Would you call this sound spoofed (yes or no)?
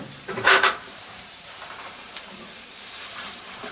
yes